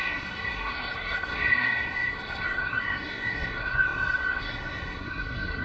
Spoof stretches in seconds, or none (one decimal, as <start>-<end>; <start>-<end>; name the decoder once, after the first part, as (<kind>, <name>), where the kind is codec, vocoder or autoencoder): 0.0-5.6 (codec, SNAC)